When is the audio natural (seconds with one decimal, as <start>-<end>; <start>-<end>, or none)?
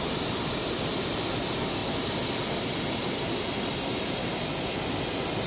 0.0-5.5